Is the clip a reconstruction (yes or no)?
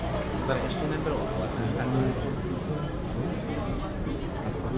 no